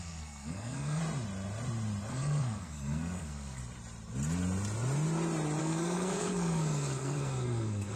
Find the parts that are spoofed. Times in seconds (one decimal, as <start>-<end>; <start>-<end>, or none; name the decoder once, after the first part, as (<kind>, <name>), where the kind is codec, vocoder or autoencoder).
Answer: 0.0-1.0 (codec, SNAC); 2.1-3.6; 5.6-8.0